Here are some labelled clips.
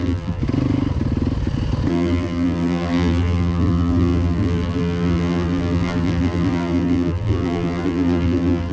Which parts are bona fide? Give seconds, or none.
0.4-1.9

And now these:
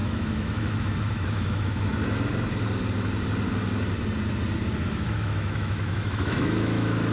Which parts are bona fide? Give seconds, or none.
1.9-4.9

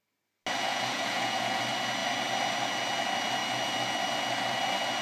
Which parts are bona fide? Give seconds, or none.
0.0-0.7; 1.6-5.0

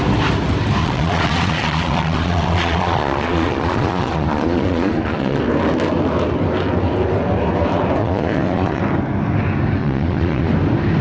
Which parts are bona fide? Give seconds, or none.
0.0-0.8; 5.4-8.0; 8.8-9.8; 10.5-11.0

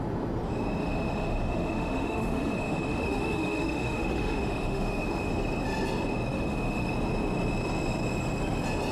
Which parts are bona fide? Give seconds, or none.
0.0-0.8; 5.3-6.3; 6.9-8.9

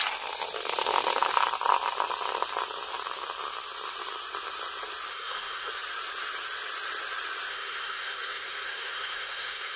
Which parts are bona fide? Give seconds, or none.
0.0-5.1; 5.7-7.5

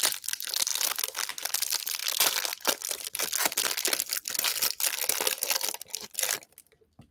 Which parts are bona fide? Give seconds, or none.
0.0-7.1